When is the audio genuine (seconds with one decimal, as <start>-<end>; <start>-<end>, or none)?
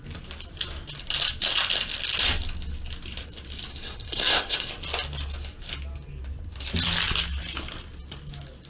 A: 0.0-3.7; 4.7-8.7